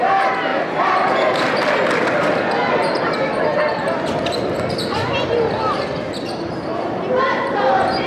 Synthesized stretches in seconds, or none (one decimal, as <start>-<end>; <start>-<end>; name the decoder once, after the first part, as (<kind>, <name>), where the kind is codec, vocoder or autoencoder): none